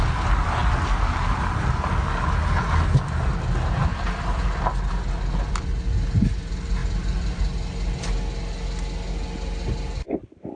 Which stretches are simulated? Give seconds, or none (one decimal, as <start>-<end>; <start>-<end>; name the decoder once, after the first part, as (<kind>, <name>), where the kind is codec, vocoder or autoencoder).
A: none